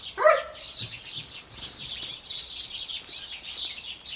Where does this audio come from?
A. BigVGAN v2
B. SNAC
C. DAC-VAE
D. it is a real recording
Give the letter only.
D